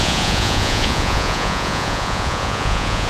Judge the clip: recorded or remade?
remade